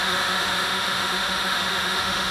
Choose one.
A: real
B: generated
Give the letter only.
B